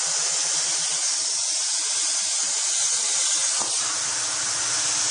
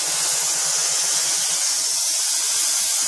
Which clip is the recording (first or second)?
first